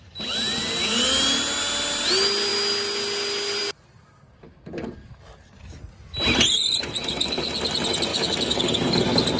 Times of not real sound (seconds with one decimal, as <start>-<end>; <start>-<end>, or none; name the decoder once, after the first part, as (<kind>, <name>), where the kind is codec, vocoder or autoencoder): 8.1-8.7 (codec, DAC)